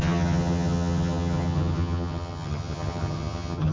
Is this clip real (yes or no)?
no